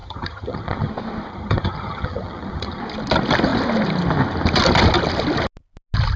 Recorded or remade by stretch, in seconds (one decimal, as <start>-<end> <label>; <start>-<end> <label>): 0.0-0.9 remade; 0.9-1.3 recorded; 1.3-2.8 remade; 2.8-6.2 recorded